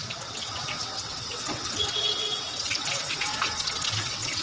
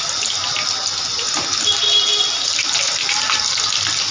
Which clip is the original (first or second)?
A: second